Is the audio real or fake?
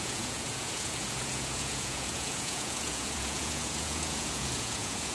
fake